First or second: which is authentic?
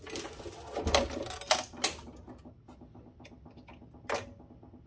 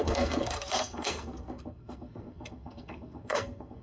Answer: first